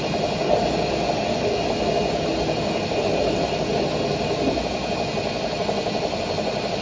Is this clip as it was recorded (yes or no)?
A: yes